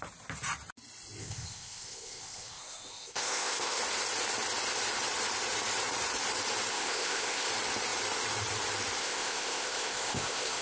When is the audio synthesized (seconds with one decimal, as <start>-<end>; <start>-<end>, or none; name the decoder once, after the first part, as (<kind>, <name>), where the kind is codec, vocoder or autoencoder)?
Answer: 1.2-3.8 (codec, ZipCodec); 6.7-7.5; 9.0-10.6